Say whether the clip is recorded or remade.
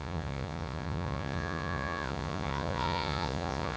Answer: remade